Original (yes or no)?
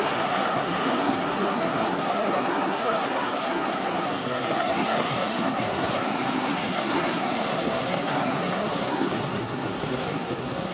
no